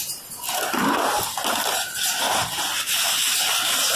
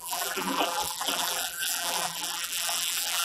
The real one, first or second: first